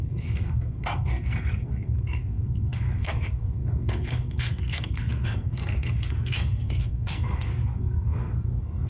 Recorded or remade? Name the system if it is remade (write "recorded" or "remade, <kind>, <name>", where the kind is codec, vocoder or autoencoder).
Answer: remade, codec, SNAC